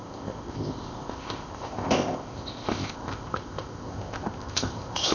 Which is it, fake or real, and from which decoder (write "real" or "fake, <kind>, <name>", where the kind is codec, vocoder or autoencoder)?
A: fake, codec, ZipCodec